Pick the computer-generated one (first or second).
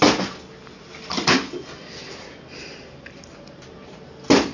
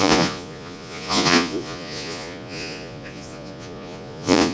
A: second